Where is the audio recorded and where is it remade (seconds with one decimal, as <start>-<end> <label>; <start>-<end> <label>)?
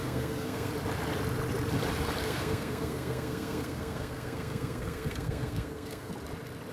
0.0-0.7 remade; 0.7-2.2 recorded; 2.2-6.1 remade; 6.1-6.7 recorded